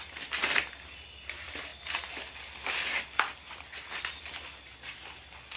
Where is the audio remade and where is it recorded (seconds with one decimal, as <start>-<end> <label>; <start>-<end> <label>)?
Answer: 0.0-5.6 recorded